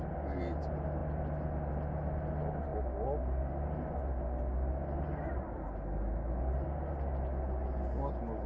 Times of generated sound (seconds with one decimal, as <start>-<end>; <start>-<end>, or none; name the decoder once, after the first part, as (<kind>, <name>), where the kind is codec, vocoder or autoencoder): none